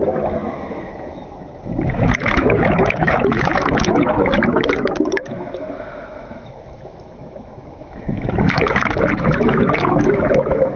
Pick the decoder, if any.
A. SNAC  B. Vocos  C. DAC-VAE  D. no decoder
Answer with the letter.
C